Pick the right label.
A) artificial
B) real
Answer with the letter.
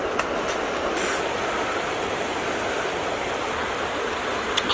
B